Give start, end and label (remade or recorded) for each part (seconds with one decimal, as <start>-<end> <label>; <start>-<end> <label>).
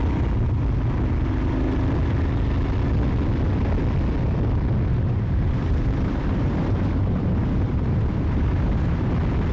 0.0-4.9 recorded; 4.9-9.1 remade; 9.1-9.5 recorded